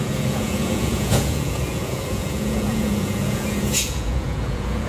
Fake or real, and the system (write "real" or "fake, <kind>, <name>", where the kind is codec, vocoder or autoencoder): fake, vocoder, Vocos